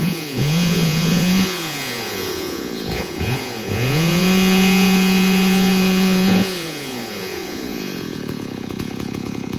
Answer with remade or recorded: remade